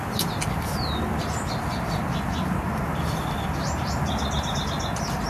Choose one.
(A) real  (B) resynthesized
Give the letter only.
A